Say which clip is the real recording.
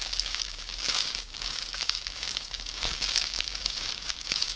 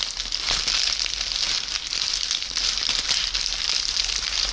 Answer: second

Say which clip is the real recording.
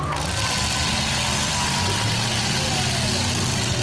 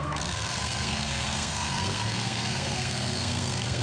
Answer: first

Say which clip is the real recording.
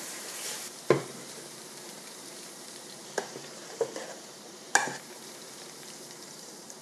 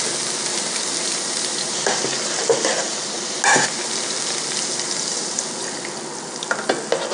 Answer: second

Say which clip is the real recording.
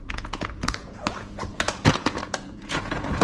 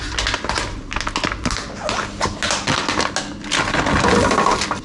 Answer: second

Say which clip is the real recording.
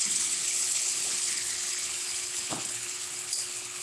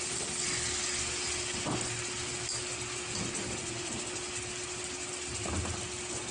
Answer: second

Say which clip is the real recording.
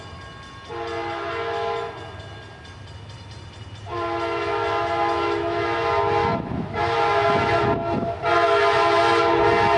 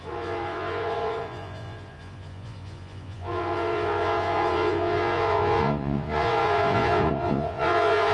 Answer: first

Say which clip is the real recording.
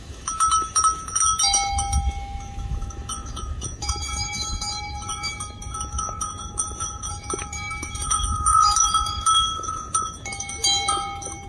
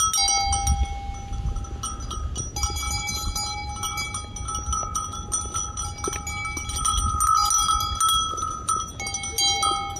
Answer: second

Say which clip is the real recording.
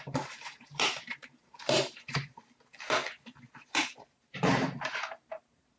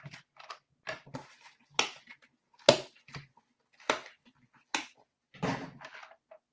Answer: second